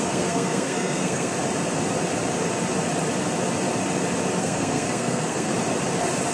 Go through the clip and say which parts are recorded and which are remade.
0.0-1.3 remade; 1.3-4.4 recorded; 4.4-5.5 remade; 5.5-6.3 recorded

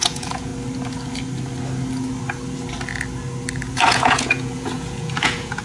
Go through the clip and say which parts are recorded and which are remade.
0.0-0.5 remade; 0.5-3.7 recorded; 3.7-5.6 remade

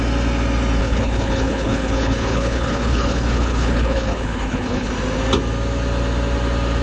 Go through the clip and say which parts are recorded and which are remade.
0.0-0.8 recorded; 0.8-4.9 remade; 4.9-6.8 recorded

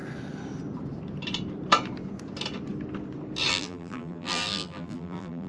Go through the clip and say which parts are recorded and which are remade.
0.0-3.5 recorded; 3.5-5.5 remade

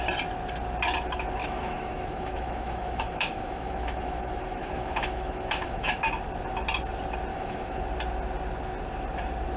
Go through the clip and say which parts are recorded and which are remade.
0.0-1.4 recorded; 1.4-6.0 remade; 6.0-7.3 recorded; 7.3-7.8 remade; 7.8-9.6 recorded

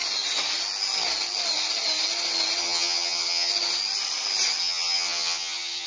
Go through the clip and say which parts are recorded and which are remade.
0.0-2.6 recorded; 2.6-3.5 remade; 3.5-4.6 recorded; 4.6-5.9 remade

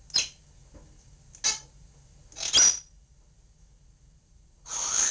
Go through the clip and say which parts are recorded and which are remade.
0.0-5.1 recorded